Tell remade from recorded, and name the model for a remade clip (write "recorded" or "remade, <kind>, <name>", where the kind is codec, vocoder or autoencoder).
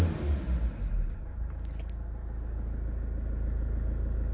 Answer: recorded